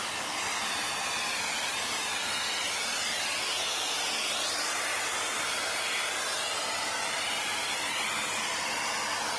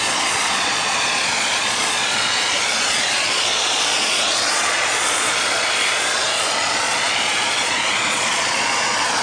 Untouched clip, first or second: first